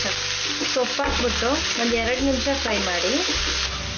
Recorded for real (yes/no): yes